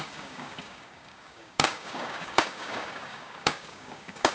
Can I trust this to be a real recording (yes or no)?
no